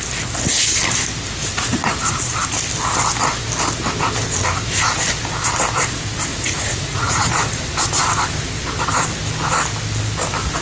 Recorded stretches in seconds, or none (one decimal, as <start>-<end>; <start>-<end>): 0.0-1.5; 2.4-6.3; 7.4-10.6